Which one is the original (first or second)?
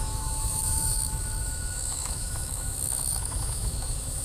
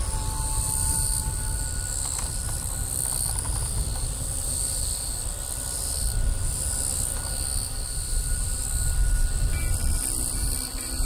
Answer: second